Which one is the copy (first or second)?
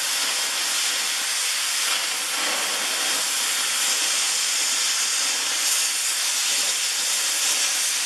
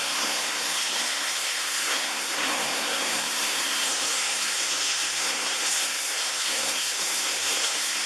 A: second